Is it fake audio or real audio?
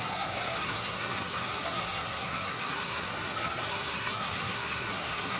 fake